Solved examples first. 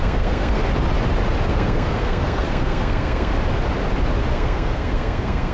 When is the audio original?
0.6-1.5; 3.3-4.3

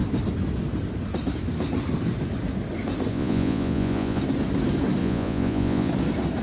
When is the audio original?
0.0-3.1; 4.2-5.0; 5.9-6.4

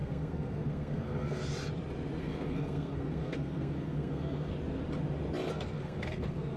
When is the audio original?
1.4-2.2; 4.5-5.5